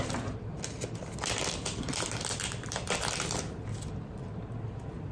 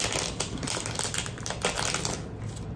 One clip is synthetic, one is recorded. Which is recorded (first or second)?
second